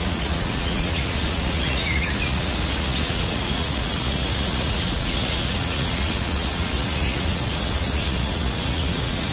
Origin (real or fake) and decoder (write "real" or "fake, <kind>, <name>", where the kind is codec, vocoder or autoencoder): fake, vocoder, Vocos